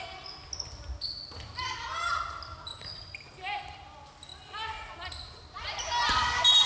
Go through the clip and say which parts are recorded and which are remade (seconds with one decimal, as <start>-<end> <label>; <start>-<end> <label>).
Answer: 0.0-1.5 recorded; 1.5-3.3 remade; 3.3-6.7 recorded